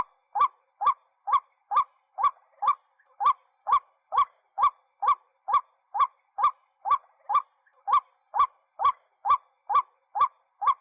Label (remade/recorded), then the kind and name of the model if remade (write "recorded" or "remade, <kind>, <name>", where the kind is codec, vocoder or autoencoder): recorded